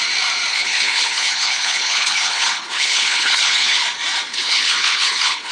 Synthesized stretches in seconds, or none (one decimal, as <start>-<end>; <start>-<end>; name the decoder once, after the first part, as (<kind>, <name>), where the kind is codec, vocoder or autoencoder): 0.5-3.8 (codec, HILCodec); 4.3-5.5